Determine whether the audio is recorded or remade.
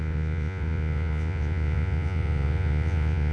remade